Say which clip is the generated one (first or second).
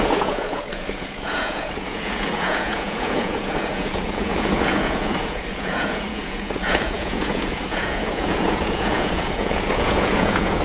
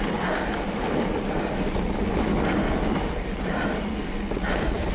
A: first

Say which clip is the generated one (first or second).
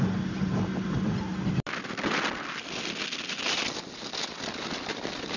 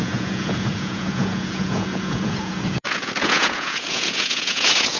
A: second